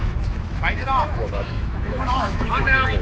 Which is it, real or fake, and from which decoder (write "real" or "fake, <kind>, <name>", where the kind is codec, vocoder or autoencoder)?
fake, autoencoder, DAC-VAE